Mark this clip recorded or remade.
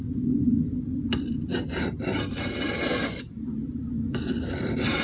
recorded